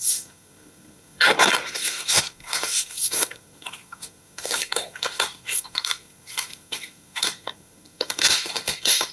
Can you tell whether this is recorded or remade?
remade